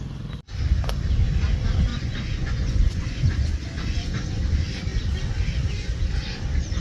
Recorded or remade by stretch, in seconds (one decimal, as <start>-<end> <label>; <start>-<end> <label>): 0.0-1.9 recorded; 1.9-4.4 remade; 4.4-6.8 recorded